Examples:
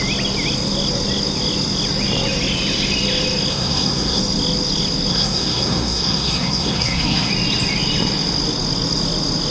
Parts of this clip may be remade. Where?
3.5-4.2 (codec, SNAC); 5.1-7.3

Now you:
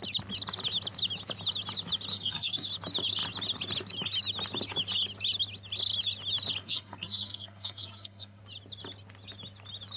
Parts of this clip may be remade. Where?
2.1-2.7 (codec, SNAC); 6.6-8.4

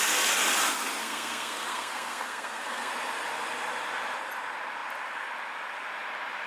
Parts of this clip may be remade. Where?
1.0-2.9 (codec, SNAC)